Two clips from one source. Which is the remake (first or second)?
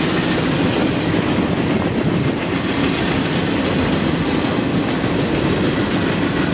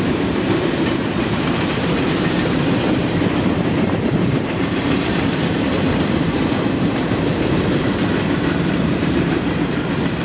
second